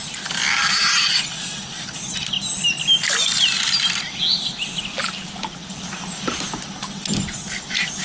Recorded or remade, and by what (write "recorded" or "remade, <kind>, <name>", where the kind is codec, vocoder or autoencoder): recorded